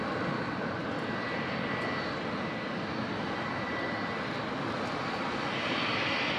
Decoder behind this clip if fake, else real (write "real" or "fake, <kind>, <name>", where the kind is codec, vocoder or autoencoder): real